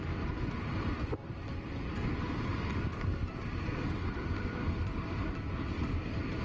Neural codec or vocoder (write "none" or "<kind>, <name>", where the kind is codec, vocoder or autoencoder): none